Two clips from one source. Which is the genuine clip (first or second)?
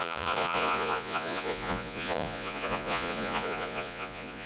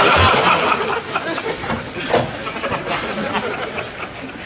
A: second